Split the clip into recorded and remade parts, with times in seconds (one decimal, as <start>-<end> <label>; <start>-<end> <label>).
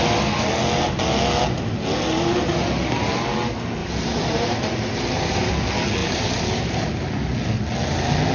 0.0-3.8 recorded; 3.8-5.5 remade; 5.5-6.0 recorded; 6.0-6.8 remade; 6.8-8.3 recorded